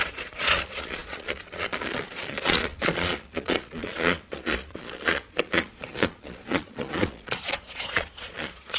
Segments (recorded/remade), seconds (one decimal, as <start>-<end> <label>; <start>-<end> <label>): 0.0-8.8 remade